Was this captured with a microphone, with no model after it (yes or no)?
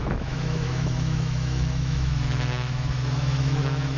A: no